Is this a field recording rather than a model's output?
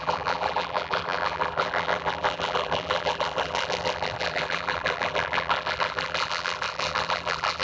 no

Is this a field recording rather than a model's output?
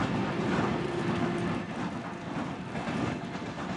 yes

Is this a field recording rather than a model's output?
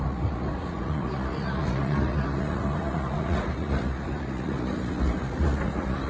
no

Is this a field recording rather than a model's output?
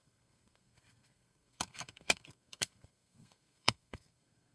no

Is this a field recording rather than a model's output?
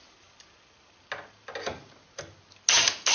yes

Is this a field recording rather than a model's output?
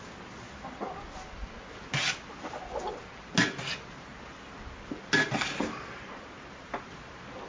yes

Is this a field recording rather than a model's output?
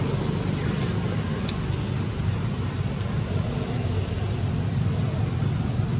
yes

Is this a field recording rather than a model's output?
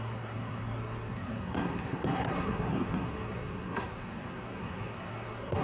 no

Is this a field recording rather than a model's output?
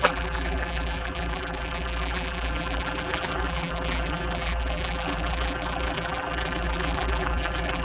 no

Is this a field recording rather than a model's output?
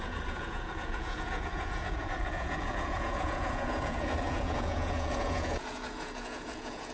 no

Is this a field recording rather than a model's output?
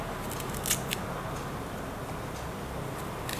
yes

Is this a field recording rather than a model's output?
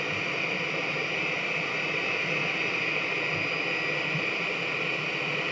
yes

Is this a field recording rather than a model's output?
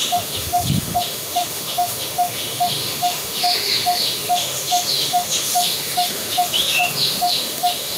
no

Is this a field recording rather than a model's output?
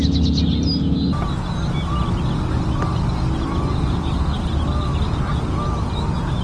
yes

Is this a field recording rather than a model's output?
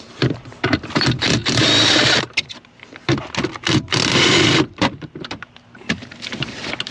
no